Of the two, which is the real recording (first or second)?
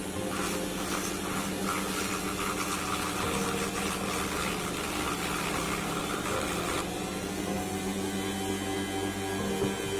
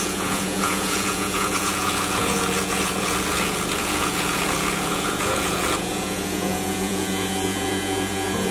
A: first